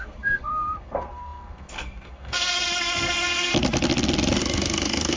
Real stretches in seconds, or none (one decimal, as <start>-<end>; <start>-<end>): 3.5-4.4